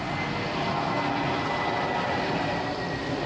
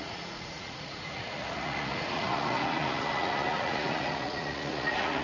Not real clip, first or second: second